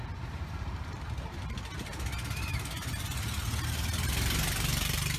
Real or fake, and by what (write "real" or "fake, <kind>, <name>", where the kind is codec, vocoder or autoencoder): real